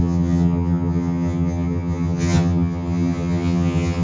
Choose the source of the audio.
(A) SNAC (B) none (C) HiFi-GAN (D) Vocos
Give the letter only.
C